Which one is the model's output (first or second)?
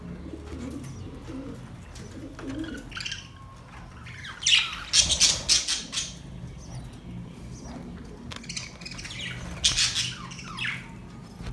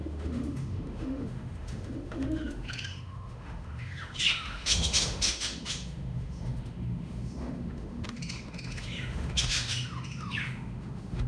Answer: second